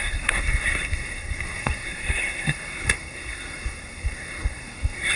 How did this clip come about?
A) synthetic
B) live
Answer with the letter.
A